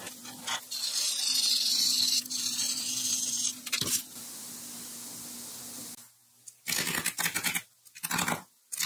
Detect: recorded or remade recorded